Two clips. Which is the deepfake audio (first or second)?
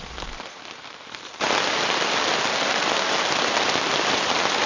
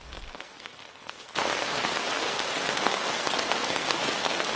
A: second